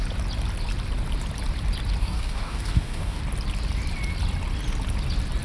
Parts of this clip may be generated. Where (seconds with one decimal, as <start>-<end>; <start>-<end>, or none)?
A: 2.0-3.2